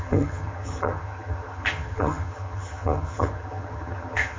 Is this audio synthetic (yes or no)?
yes